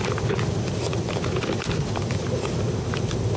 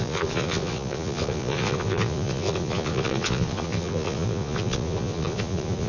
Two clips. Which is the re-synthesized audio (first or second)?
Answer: second